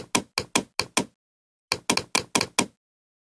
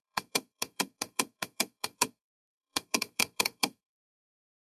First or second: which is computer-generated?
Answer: second